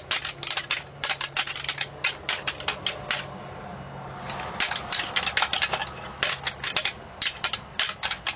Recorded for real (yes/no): yes